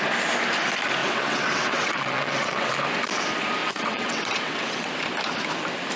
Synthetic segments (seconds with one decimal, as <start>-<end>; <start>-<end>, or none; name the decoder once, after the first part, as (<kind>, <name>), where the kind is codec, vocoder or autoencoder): 1.0-2.7 (vocoder, WaveNeXt); 3.6-4.9